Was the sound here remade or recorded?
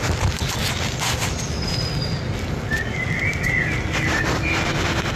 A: recorded